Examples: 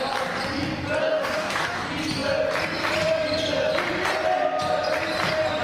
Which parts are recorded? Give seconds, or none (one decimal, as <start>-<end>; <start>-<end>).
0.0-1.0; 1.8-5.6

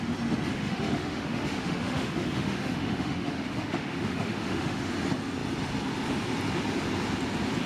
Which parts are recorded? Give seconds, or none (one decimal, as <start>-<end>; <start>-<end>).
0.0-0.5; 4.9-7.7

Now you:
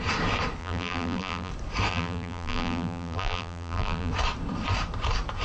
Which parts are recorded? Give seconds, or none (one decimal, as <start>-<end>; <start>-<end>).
0.0-0.6; 1.5-1.9; 4.1-5.4

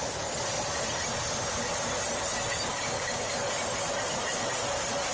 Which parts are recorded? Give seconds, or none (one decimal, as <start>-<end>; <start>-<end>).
0.0-2.7; 3.3-5.1

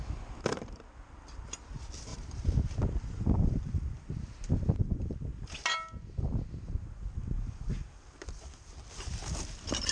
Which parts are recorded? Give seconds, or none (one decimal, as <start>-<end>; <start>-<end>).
0.0-2.1; 3.2-9.9

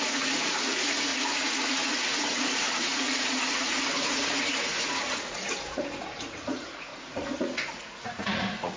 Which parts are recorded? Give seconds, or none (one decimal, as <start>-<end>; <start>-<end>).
none